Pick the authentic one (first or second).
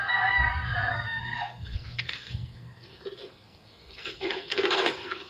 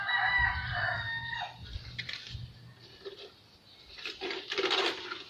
second